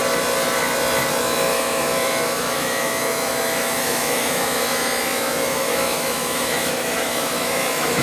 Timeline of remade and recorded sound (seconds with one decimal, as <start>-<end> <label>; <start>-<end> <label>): 0.0-1.2 recorded; 1.2-8.0 remade